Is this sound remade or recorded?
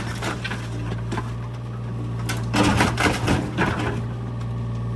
recorded